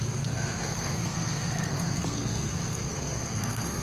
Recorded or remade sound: remade